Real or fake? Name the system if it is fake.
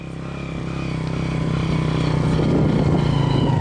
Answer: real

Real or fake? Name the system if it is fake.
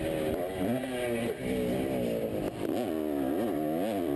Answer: real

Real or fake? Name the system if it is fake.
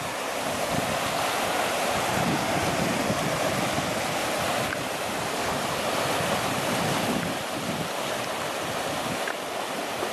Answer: fake, vocoder, BigVGAN v2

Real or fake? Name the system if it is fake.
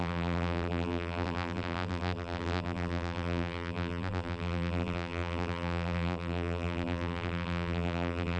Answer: fake, vocoder, BigVGAN v2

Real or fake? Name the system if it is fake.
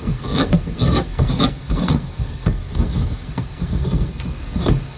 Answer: fake, codec, SNAC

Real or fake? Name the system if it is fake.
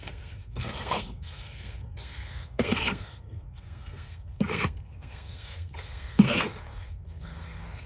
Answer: fake, codec, SNAC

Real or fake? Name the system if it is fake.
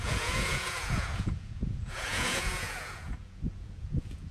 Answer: fake, vocoder, Vocos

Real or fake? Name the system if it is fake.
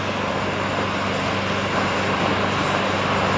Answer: real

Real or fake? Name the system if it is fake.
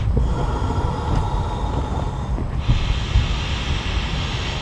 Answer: real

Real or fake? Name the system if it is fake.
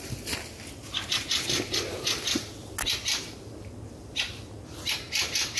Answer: real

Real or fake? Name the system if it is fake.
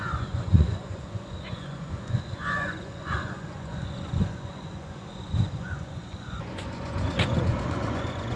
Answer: fake, vocoder, Vocos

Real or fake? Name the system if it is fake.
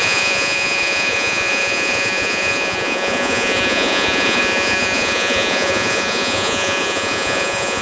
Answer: fake, vocoder, Vocos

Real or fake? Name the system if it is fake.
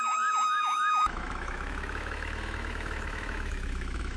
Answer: fake, autoencoder, DAC-VAE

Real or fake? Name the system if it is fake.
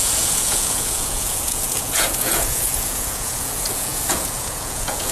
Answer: fake, vocoder, Vocos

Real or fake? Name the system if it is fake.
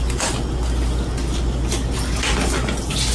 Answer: real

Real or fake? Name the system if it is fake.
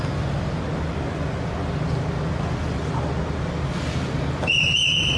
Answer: real